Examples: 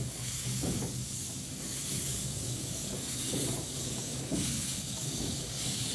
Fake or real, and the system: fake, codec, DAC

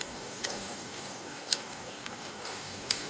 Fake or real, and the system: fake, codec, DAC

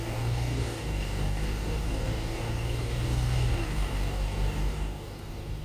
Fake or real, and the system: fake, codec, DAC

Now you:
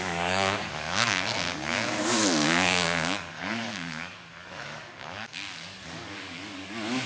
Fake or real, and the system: fake, codec, DAC